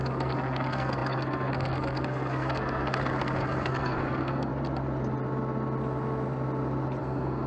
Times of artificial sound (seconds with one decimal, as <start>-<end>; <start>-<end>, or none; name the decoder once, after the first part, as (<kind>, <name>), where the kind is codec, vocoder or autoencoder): 0.0-4.5 (codec, SNAC); 7.0-7.5

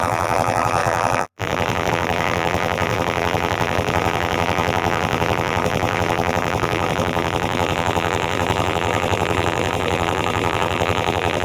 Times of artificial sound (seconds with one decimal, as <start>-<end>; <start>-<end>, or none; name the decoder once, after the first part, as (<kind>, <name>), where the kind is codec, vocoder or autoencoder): 0.0-11.4 (vocoder, BigVGAN v2)

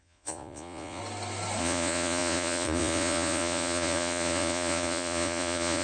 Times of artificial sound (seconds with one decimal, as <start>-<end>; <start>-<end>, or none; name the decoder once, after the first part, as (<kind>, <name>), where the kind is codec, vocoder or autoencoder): 0.0-1.0 (vocoder, Vocos); 1.6-5.8

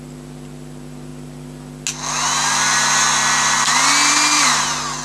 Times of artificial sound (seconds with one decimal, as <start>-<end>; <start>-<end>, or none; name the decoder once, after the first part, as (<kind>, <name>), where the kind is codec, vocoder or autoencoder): none

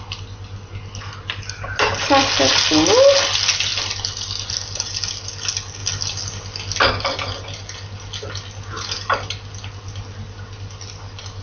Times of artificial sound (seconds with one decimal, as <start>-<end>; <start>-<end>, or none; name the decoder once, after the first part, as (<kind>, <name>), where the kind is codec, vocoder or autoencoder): none

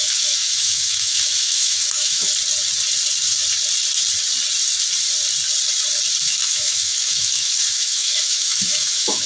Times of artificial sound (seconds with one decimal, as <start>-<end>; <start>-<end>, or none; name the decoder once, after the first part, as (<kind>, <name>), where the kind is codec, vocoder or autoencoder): 0.0-2.3 (autoencoder, DAC-VAE); 6.2-9.3